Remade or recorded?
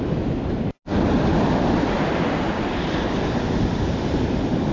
remade